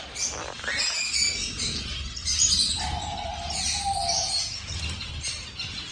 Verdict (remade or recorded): recorded